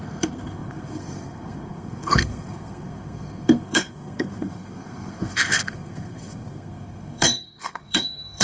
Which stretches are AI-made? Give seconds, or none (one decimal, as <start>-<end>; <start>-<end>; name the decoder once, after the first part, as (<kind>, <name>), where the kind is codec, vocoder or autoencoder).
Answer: 0.0-8.4 (codec, SNAC)